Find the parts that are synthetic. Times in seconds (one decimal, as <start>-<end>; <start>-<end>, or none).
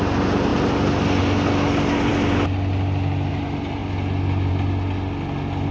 none